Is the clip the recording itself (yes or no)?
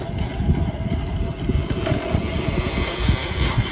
yes